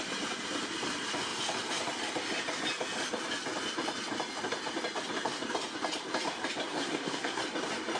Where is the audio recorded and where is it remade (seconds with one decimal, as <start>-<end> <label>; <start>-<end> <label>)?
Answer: 0.0-6.7 recorded; 6.7-7.4 remade; 7.4-8.0 recorded

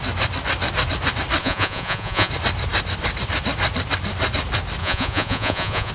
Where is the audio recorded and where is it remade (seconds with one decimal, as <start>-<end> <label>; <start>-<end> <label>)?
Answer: 0.0-1.4 recorded; 1.4-2.3 remade; 2.3-4.8 recorded; 4.8-5.9 remade